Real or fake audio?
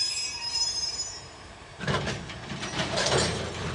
fake